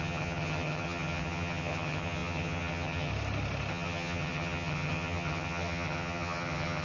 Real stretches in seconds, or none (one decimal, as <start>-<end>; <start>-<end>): 3.1-3.7